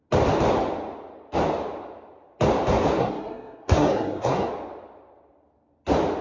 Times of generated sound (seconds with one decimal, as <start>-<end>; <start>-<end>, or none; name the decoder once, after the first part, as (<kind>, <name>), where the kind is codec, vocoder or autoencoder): 3.0-4.5 (codec, SNAC)